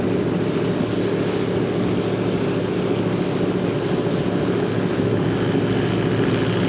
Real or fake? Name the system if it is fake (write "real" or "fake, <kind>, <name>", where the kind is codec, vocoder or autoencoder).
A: real